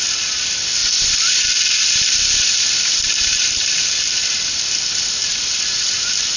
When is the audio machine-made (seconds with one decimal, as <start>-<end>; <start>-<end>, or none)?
none